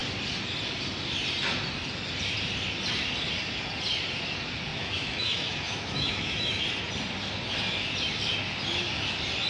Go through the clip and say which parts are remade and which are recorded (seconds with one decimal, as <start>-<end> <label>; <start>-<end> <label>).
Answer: 0.0-4.7 recorded; 4.7-6.6 remade; 6.6-9.5 recorded

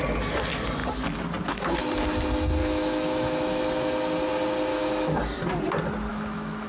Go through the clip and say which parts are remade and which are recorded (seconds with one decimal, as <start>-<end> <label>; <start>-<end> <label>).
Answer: 0.0-2.6 recorded; 2.6-3.6 remade; 3.6-4.7 recorded; 4.7-5.2 remade; 5.2-6.1 recorded; 6.1-6.7 remade

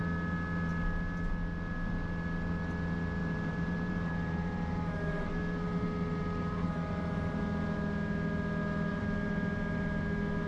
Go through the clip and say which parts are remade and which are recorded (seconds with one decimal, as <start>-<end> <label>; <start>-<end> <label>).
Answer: 0.0-3.2 recorded; 3.2-7.4 remade; 7.4-8.9 recorded; 8.9-10.0 remade; 10.0-10.5 recorded

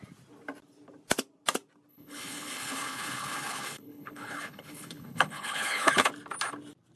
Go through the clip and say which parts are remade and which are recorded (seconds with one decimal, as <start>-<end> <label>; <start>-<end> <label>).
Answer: 0.0-1.9 recorded; 1.9-6.1 remade; 6.1-7.0 recorded

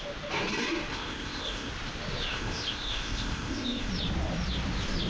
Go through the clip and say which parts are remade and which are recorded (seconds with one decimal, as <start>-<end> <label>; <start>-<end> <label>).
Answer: 0.0-0.9 recorded; 0.9-1.7 remade; 1.7-2.3 recorded; 2.3-3.9 remade; 3.9-5.1 recorded